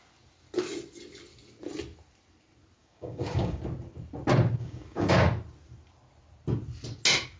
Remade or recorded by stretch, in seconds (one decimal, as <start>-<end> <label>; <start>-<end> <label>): 0.0-2.8 recorded; 2.8-3.6 remade; 3.6-4.6 recorded; 4.6-5.1 remade; 5.1-7.4 recorded